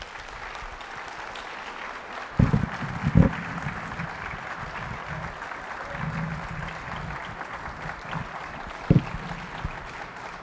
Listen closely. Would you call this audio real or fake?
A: real